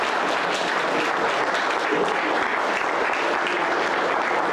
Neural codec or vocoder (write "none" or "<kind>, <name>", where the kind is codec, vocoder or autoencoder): none